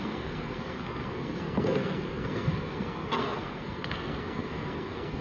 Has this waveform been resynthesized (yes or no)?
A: yes